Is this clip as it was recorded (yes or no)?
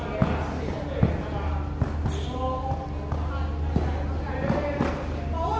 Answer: yes